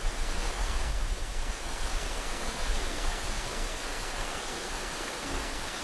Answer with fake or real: fake